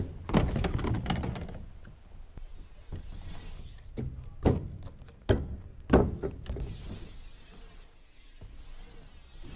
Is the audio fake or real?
real